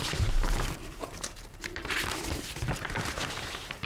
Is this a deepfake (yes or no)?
yes